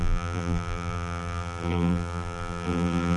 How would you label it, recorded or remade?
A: remade